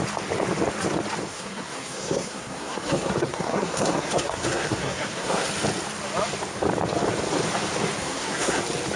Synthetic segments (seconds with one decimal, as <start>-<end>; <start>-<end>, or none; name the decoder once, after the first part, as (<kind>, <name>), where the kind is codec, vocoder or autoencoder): 1.3-5.5 (codec, SNAC); 8.0-8.6